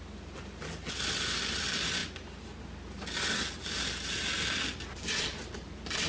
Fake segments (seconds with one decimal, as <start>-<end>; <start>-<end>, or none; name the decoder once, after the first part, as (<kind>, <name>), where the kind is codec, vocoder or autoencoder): none